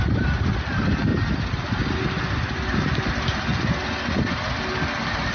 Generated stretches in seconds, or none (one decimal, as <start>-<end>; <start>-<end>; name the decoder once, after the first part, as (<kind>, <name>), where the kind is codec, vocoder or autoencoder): none